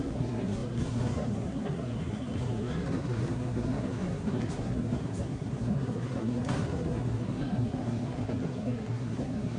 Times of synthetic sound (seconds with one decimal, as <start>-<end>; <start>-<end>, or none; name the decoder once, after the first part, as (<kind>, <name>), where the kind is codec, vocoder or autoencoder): 0.0-9.6 (codec, SNAC)